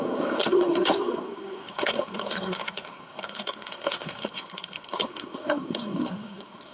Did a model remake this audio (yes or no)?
yes